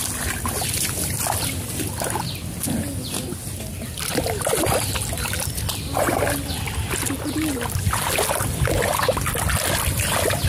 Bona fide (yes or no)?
yes